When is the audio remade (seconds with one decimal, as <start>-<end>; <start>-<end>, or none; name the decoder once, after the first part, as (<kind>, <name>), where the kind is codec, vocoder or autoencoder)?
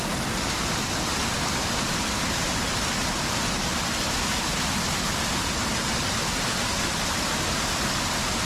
6.2-7.7 (vocoder, BigVGAN v2)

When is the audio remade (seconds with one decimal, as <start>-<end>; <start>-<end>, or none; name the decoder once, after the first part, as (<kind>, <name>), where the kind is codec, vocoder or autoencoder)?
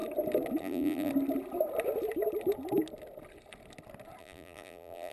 0.6-1.1 (vocoder, BigVGAN v2); 4.2-5.1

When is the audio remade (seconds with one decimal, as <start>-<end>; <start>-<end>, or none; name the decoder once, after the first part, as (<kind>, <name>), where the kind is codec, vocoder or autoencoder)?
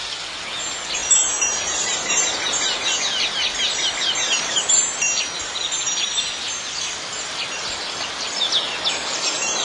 0.0-2.8 (vocoder, BigVGAN v2); 3.9-9.6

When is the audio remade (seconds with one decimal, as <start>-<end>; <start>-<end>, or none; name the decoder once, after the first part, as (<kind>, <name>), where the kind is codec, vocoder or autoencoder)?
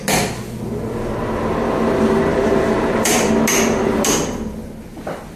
2.3-3.3 (vocoder, BigVGAN v2)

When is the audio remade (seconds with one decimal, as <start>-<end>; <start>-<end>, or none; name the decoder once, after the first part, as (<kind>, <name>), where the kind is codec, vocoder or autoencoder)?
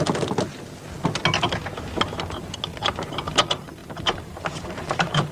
3.8-5.3 (vocoder, BigVGAN v2)